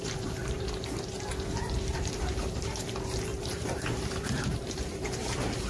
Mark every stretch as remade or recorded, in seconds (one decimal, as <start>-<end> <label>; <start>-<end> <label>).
0.0-0.4 recorded; 0.4-2.9 remade; 2.9-3.3 recorded; 3.3-5.7 remade